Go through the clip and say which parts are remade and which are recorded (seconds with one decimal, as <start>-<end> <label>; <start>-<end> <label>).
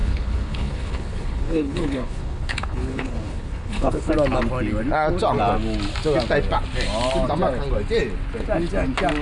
0.0-4.1 remade; 4.1-9.2 recorded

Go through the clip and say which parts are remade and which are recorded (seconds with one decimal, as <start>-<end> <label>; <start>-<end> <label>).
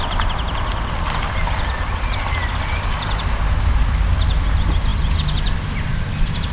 0.0-6.5 recorded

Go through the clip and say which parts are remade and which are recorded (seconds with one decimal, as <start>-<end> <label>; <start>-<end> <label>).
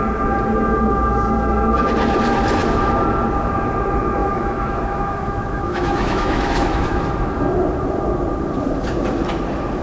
0.0-4.2 recorded; 4.2-7.0 remade; 7.0-9.8 recorded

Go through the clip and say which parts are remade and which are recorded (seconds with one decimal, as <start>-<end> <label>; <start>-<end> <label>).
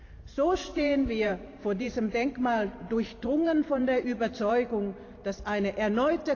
0.0-0.7 recorded; 0.7-4.5 remade; 4.5-6.3 recorded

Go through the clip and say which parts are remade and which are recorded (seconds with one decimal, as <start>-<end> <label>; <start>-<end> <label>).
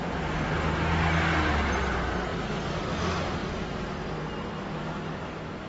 0.0-5.7 recorded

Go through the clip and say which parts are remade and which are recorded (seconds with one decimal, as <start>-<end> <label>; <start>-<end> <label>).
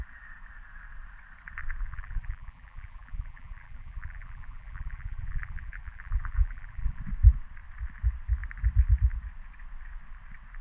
0.0-1.9 recorded; 1.9-7.0 remade; 7.0-10.6 recorded